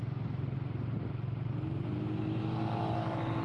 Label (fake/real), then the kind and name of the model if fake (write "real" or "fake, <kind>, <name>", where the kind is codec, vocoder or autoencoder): real